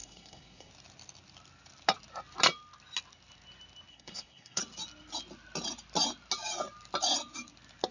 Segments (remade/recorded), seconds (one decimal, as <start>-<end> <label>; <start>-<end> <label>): 0.0-0.7 remade; 0.7-3.9 recorded; 3.9-4.6 remade; 4.6-7.9 recorded